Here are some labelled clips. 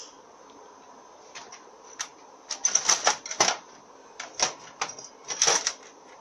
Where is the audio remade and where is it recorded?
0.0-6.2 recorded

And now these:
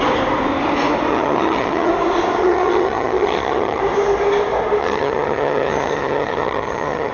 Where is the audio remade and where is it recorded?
0.0-1.1 recorded; 1.1-1.9 remade; 1.9-2.4 recorded; 2.4-3.8 remade; 3.8-4.8 recorded; 4.8-7.1 remade

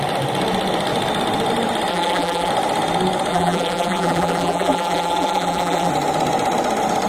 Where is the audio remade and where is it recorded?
0.0-1.9 recorded; 1.9-2.5 remade; 2.5-3.3 recorded; 3.3-5.9 remade; 5.9-7.1 recorded

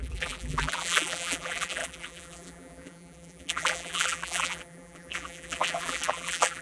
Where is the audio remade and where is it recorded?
0.0-6.6 remade

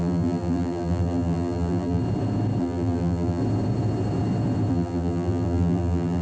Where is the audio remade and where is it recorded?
0.0-2.0 remade; 2.0-2.6 recorded; 2.6-3.4 remade; 3.4-4.7 recorded; 4.7-6.2 remade

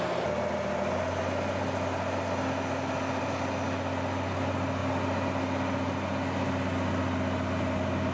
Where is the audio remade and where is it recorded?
0.0-8.1 recorded

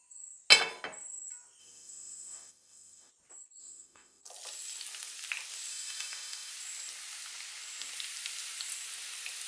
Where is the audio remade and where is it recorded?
0.0-1.6 recorded; 1.6-3.1 remade; 3.1-3.6 recorded; 3.6-4.2 remade; 4.2-5.7 recorded; 5.7-6.5 remade; 6.5-9.5 recorded